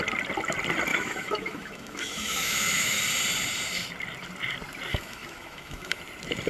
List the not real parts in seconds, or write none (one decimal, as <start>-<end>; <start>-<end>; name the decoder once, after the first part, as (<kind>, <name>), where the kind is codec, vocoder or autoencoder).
0.9-3.0 (autoencoder, DAC-VAE); 4.9-6.0